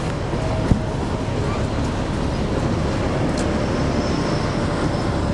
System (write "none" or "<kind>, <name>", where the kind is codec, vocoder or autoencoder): none